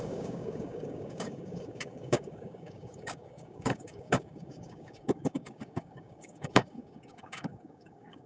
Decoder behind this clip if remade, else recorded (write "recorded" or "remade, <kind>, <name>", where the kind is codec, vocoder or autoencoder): remade, codec, DAC